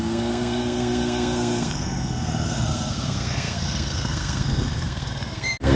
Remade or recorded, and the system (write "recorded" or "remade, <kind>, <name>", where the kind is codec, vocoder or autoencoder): remade, codec, SNAC